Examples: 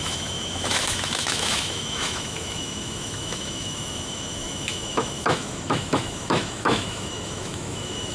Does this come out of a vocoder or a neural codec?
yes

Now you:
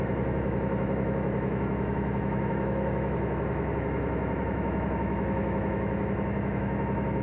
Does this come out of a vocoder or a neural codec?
yes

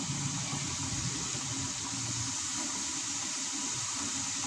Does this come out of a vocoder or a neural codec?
no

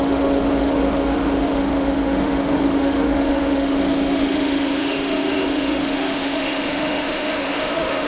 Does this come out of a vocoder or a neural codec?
yes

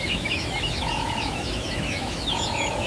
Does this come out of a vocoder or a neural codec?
yes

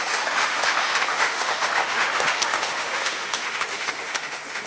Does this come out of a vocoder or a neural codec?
yes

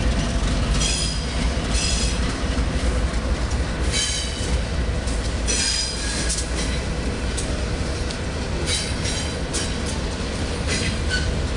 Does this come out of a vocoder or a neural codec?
no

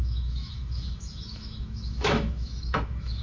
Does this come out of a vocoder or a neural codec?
yes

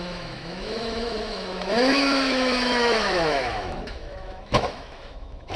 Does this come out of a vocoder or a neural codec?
yes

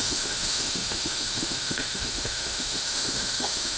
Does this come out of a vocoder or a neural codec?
yes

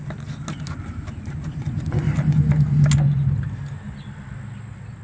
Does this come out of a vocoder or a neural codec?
no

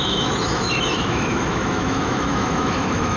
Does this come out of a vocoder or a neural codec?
yes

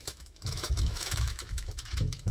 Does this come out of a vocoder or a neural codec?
yes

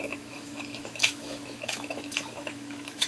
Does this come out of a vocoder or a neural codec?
yes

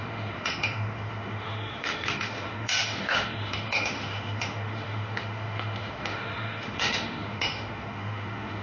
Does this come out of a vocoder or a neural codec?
yes